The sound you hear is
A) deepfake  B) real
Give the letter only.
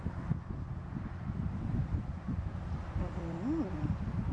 A